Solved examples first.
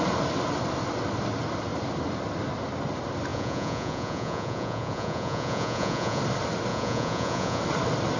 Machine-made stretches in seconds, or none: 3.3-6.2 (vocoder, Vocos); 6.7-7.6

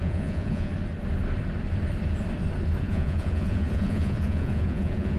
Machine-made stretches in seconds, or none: 0.0-0.7 (vocoder, Vocos); 2.8-5.2

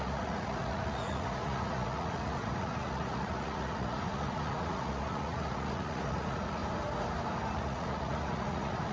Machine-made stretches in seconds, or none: 0.0-6.6 (vocoder, Vocos); 7.5-8.9